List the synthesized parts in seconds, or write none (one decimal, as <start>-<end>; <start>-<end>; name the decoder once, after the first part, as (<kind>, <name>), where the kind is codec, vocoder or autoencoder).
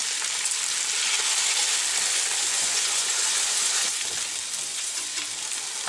2.5-4.0 (vocoder, Vocos); 4.7-5.2